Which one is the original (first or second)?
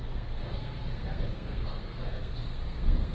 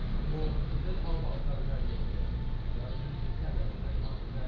second